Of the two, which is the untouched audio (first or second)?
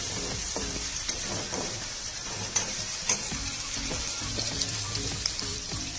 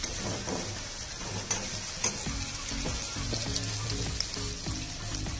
second